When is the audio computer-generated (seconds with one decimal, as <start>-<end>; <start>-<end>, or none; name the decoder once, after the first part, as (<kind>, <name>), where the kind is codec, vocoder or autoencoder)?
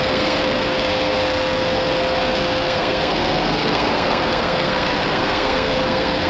0.0-6.3 (codec, SNAC)